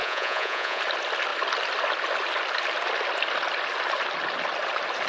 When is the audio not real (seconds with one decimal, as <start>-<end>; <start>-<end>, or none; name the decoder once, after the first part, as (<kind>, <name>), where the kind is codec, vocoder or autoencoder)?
0.0-0.8 (vocoder, Vocos)